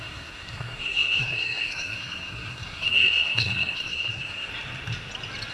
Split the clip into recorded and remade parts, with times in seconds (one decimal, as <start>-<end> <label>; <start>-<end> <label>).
0.0-4.5 remade; 4.5-5.5 recorded